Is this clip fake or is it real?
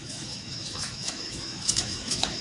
fake